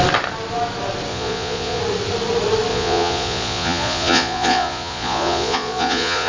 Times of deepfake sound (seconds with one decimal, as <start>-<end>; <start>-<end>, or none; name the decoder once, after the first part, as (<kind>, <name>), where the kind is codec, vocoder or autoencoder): 1.1-1.8 (vocoder, Vocos); 2.7-6.3